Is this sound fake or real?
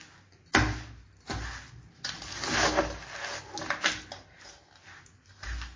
real